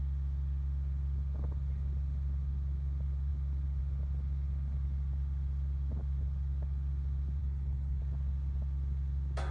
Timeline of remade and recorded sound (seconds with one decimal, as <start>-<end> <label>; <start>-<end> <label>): 0.0-7.4 recorded; 7.4-8.0 remade; 8.0-9.5 recorded